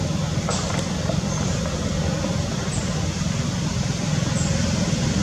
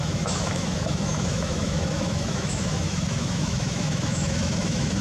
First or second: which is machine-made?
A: second